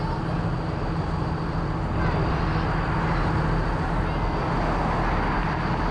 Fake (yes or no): no